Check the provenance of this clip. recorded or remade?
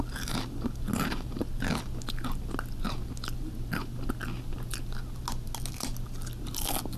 recorded